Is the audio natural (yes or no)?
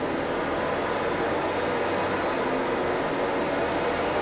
yes